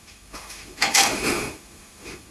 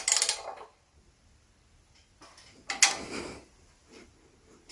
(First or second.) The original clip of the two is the second